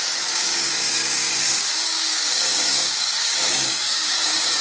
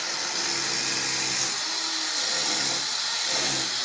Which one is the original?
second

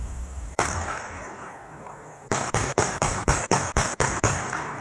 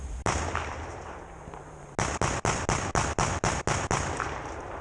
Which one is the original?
second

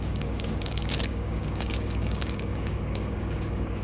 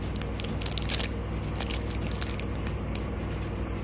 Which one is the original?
second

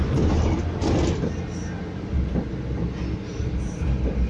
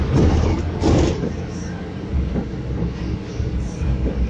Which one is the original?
first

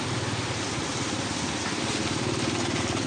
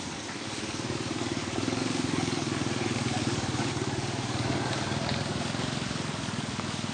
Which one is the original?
first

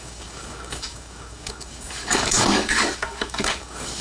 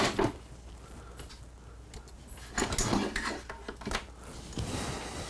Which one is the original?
second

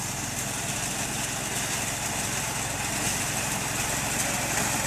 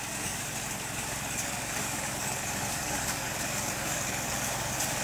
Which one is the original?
first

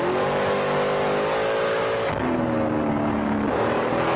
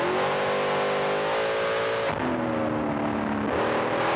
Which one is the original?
second